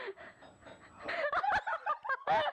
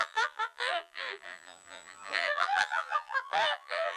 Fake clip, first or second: second